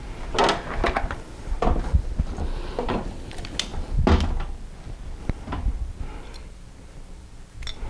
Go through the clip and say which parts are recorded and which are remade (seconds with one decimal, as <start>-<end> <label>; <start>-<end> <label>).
0.0-7.9 recorded